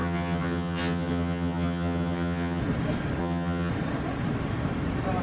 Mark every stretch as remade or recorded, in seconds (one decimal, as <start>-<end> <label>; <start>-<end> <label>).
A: 0.0-2.6 remade; 2.6-3.2 recorded; 3.2-3.7 remade; 3.7-5.2 recorded